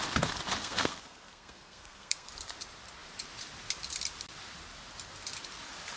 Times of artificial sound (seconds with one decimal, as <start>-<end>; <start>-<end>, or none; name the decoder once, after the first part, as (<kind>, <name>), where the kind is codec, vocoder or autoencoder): 0.6-2.3 (codec, SNAC)